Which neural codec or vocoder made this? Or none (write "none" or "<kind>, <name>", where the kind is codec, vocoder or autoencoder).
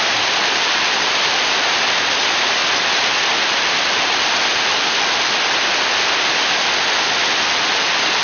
none